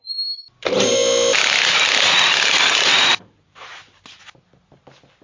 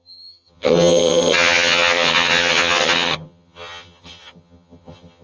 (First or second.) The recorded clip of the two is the first